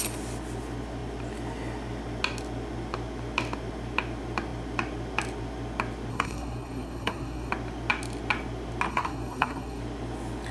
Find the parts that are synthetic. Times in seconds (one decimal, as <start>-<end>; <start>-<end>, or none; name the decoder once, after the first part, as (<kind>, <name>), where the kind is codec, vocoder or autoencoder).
6.1-7.5 (codec, SNAC); 8.9-9.8